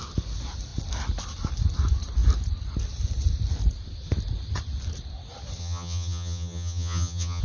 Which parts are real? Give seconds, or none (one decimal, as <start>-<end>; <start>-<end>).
0.0-5.6